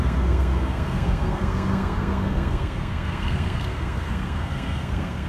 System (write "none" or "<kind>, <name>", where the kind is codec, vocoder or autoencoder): codec, SNAC